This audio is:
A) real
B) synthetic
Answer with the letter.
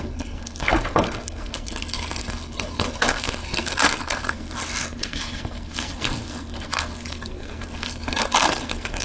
B